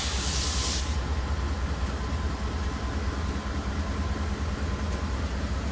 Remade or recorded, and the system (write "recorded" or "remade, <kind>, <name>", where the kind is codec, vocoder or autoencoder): recorded